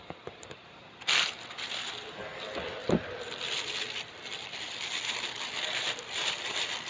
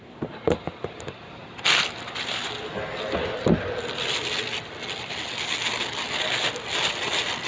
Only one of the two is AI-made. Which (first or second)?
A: first